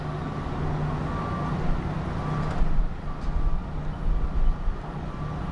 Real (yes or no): yes